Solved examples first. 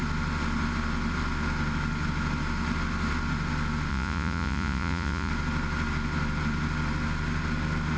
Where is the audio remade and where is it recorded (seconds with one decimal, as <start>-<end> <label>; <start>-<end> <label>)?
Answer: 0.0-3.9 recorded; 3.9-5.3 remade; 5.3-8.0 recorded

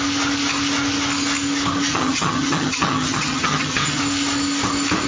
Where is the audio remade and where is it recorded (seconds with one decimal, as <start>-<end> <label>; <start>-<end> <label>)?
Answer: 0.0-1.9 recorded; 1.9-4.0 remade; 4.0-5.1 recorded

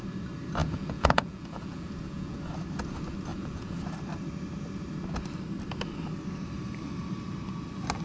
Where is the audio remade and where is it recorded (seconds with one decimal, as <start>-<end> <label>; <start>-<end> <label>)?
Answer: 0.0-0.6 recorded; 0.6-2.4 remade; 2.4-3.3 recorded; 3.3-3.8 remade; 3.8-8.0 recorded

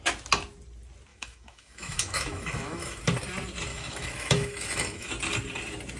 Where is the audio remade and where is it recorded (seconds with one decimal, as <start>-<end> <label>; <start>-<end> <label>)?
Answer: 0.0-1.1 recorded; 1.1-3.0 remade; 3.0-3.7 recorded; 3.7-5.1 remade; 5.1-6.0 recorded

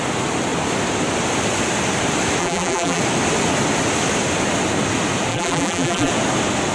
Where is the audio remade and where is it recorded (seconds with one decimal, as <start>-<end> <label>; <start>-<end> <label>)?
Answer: 0.0-2.4 recorded; 2.4-3.0 remade; 3.0-5.3 recorded; 5.3-6.1 remade; 6.1-6.7 recorded

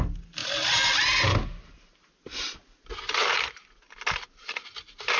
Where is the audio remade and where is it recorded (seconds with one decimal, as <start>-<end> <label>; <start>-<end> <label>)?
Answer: 0.0-5.2 recorded